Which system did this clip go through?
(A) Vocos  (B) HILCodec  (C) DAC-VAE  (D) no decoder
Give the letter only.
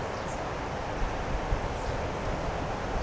D